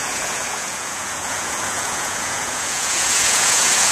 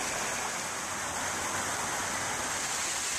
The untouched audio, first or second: second